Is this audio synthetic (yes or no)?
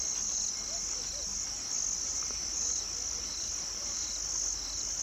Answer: no